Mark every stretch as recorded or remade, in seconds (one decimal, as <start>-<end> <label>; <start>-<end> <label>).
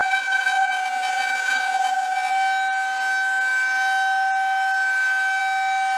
0.0-2.3 remade; 2.3-6.0 recorded